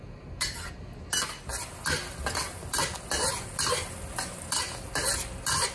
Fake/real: real